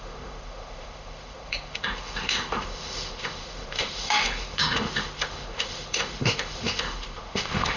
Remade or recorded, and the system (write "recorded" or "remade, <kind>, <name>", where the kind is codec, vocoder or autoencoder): remade, autoencoder, DAC-VAE